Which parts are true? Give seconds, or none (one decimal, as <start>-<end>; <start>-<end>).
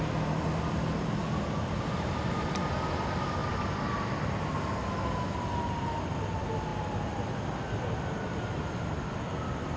0.0-9.8